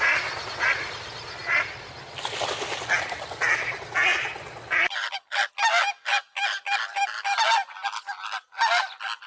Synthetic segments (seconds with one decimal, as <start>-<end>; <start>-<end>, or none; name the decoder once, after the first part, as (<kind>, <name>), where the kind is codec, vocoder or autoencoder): none